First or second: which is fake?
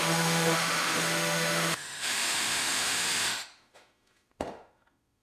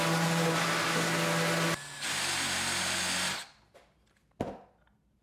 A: first